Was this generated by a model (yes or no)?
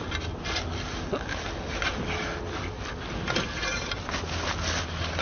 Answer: no